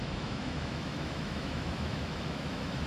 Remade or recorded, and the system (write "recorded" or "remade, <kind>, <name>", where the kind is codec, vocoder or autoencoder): remade, autoencoder, DAC-VAE